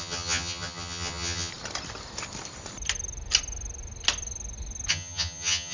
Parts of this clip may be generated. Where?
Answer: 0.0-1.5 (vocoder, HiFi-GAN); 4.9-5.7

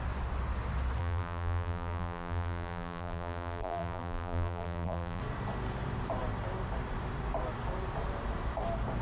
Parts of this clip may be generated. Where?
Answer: 1.0-5.2 (vocoder, BigVGAN v2)

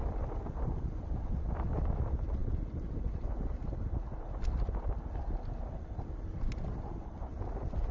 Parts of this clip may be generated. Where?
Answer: none

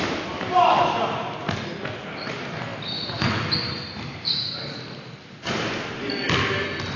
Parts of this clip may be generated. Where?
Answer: none

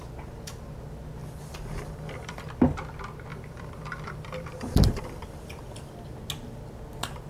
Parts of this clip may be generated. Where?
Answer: 1.2-2.4 (vocoder, BigVGAN v2); 3.3-6.2

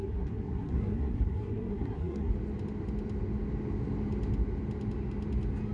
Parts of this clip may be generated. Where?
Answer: 0.0-2.3 (codec, SNAC)

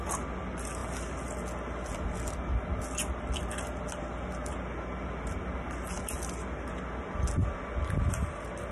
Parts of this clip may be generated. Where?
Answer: none

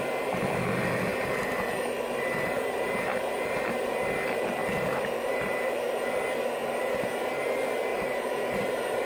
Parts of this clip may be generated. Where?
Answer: 1.1-3.5 (vocoder, BigVGAN v2); 4.6-6.1; 7.9-8.5